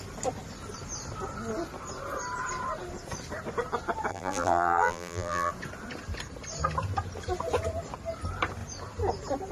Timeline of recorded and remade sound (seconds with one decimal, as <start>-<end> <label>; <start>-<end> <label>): 0.0-4.1 recorded; 4.1-5.5 remade; 5.5-9.5 recorded